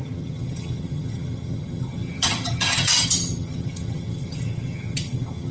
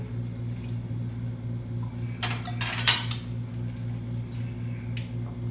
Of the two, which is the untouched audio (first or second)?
second